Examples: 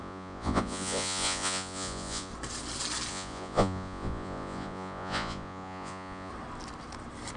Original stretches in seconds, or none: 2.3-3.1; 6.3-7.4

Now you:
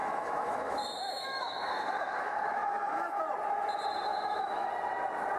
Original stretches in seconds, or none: 3.2-4.1; 4.7-5.4